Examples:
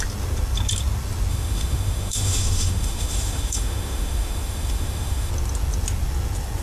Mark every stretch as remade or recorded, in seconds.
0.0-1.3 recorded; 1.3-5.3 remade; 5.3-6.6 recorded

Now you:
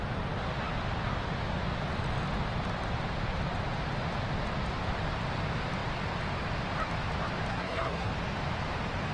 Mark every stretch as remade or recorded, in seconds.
0.0-7.5 recorded; 7.5-8.1 remade; 8.1-9.1 recorded

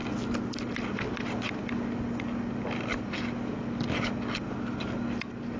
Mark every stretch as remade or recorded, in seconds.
0.0-5.6 recorded